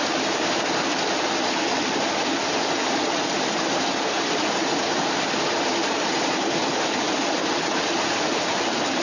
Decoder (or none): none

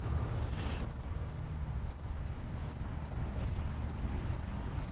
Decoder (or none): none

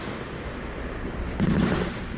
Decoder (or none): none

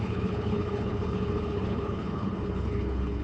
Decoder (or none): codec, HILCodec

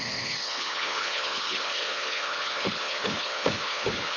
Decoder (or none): codec, HILCodec